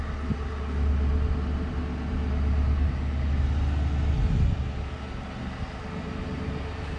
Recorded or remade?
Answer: recorded